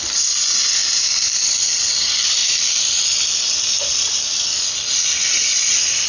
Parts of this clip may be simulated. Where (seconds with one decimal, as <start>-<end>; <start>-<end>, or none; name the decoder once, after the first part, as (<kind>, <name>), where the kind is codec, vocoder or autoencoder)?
none